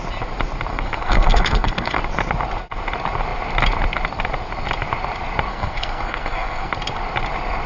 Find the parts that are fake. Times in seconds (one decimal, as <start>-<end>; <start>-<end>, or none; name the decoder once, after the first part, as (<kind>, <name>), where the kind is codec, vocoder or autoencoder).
0.7-2.0 (codec, SNAC); 5.5-6.7